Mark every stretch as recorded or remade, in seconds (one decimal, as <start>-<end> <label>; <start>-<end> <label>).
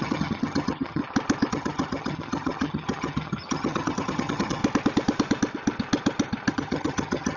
0.0-1.0 remade; 1.0-1.5 recorded; 1.5-4.6 remade; 4.6-6.5 recorded; 6.5-7.4 remade